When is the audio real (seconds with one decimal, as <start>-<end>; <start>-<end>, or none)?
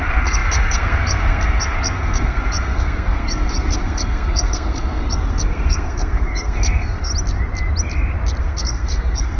7.1-8.4